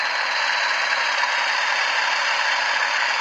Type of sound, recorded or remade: remade